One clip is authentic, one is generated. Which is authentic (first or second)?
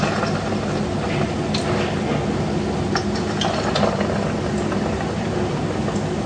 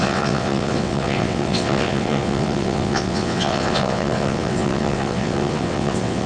first